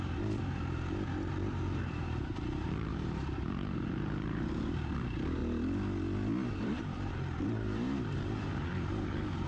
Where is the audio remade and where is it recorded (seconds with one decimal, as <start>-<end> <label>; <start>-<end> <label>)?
0.0-5.4 remade; 5.4-6.5 recorded; 6.5-9.5 remade